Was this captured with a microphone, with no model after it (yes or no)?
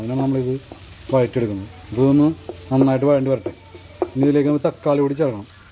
yes